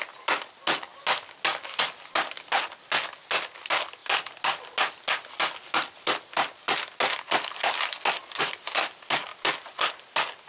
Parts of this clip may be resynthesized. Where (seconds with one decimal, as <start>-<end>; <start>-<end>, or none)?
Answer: none